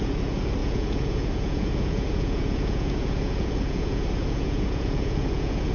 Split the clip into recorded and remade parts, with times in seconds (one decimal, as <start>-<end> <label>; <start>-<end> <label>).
0.0-5.7 remade